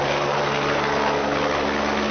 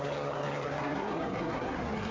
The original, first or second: first